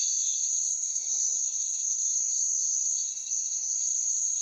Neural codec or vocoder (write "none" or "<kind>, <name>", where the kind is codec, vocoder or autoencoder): codec, SNAC